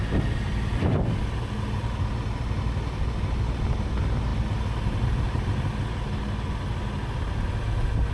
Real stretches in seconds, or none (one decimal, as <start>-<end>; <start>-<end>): 0.0-8.1